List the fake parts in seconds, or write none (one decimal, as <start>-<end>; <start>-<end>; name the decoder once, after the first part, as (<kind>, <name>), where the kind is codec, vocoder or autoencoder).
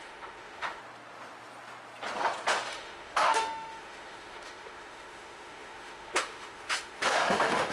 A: 0.0-0.8 (autoencoder, DAC-VAE); 2.7-7.7